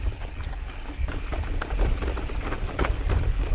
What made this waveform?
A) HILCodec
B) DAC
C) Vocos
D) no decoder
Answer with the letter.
D